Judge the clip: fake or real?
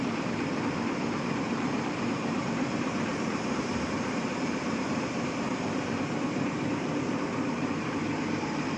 fake